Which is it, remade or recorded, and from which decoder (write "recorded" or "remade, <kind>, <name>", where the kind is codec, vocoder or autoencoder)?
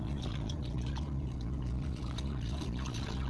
remade, vocoder, Vocos